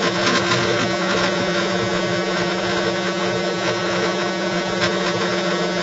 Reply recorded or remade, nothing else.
remade